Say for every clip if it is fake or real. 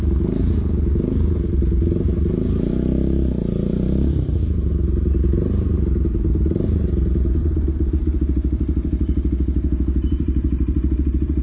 fake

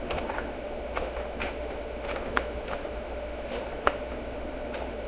fake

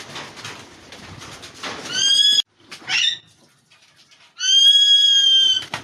real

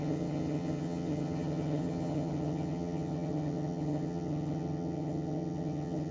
fake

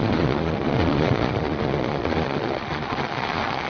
fake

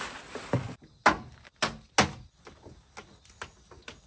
real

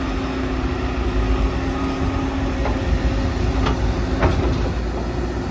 real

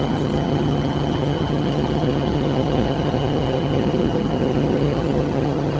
fake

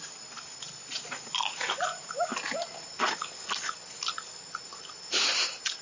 real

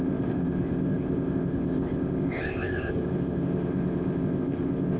fake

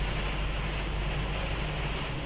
real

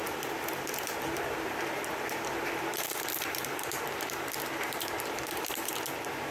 fake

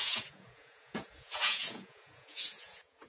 fake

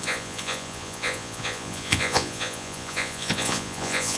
fake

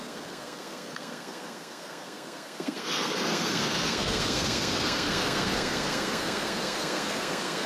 fake